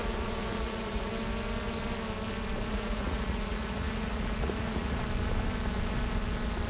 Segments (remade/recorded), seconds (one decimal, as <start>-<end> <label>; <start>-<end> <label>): 0.0-1.1 remade; 1.1-2.7 recorded; 2.7-5.0 remade; 5.0-6.7 recorded